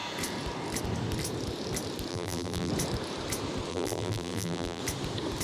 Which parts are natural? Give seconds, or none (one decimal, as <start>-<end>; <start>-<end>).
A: 0.0-2.1; 2.7-3.7; 4.8-5.4